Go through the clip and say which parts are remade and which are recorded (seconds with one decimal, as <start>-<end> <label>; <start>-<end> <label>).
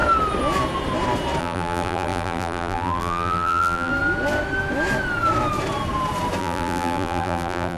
0.0-1.4 recorded; 1.4-3.9 remade; 3.9-6.4 recorded; 6.4-7.8 remade